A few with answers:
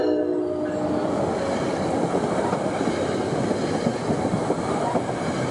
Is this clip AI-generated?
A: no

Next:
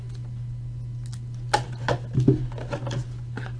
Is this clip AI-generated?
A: no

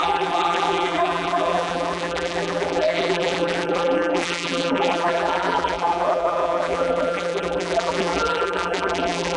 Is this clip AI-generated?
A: yes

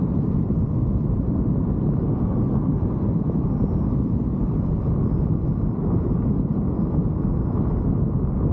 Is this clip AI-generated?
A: no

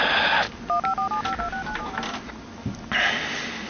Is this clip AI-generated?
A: no